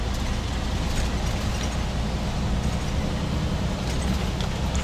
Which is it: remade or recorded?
recorded